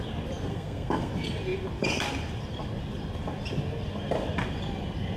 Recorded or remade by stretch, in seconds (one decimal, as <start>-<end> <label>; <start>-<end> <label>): 0.0-0.5 recorded; 0.5-1.1 remade; 1.1-5.2 recorded